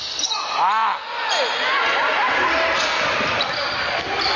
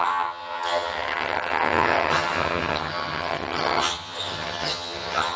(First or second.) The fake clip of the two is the second